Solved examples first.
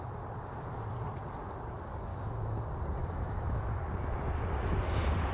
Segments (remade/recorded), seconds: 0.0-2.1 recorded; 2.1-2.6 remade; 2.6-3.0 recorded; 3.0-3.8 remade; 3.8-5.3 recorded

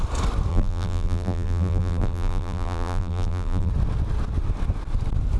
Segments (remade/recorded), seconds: 0.0-0.5 recorded; 0.5-3.7 remade; 3.7-5.4 recorded

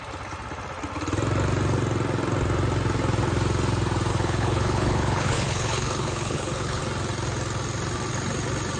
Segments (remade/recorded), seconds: 0.0-4.1 recorded; 4.1-6.8 remade; 6.8-8.8 recorded

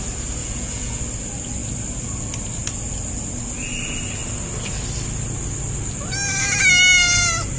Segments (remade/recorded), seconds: 0.0-0.4 recorded; 0.4-1.0 remade; 1.0-7.6 recorded

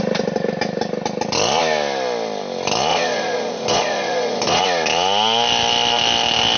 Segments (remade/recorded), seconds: 0.0-2.9 recorded; 2.9-4.6 remade; 4.6-6.6 recorded

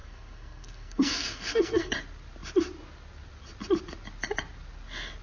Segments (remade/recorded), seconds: 0.0-1.9 remade; 1.9-5.2 recorded